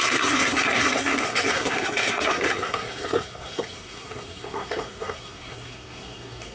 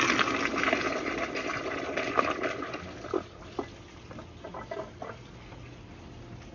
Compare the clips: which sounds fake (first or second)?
first